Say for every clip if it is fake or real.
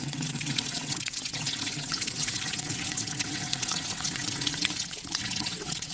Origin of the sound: fake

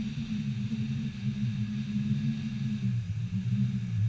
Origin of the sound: real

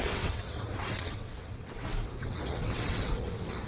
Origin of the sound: fake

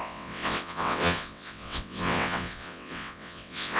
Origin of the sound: fake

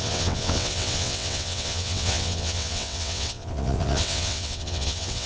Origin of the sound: fake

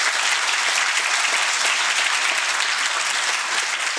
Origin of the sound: real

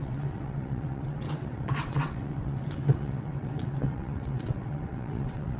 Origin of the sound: fake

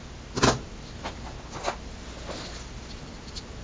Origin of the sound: real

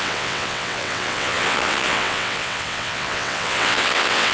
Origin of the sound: fake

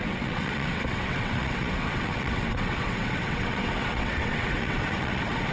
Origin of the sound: fake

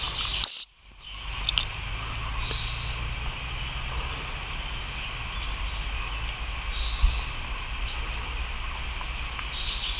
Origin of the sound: real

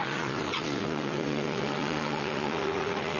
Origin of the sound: fake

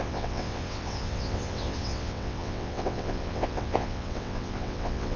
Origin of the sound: fake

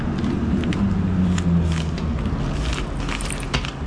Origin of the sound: real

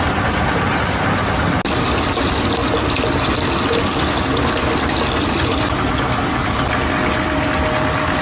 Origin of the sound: real